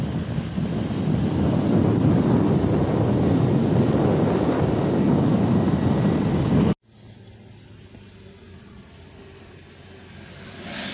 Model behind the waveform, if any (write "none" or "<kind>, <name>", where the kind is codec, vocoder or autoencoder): none